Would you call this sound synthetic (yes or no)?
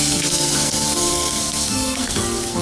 yes